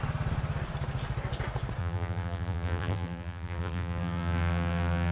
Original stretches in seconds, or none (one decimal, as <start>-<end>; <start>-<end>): 0.0-1.8